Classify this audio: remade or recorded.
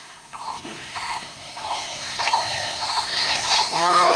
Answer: remade